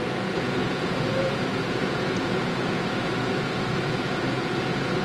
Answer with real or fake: fake